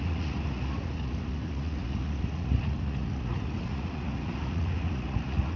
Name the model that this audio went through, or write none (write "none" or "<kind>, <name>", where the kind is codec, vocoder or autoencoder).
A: vocoder, Vocos